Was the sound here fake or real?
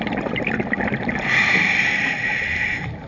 real